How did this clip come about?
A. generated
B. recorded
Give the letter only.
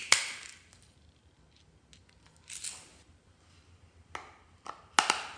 B